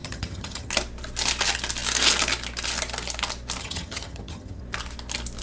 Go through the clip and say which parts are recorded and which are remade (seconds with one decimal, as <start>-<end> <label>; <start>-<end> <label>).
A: 0.0-0.7 remade; 0.7-3.6 recorded; 3.6-4.6 remade; 4.6-5.4 recorded